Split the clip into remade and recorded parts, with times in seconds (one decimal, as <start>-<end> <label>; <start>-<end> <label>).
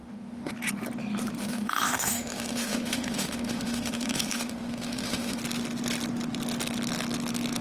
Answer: 0.0-0.5 remade; 0.5-1.4 recorded; 1.4-5.4 remade; 5.4-7.6 recorded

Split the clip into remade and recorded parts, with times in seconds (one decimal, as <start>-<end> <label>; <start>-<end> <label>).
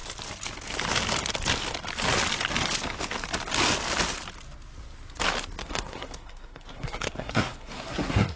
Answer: 0.0-5.6 recorded; 5.6-8.4 remade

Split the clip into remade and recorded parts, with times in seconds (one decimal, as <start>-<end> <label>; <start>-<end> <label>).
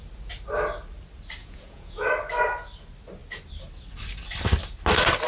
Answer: 0.0-1.4 recorded; 1.4-2.1 remade; 2.1-5.3 recorded